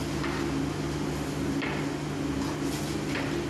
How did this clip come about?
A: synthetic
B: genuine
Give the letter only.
B